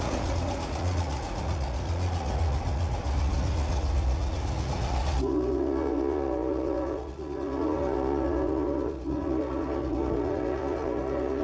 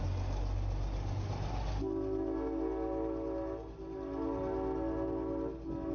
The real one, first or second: second